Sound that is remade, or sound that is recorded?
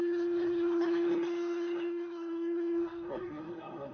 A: remade